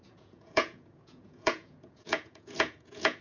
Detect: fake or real fake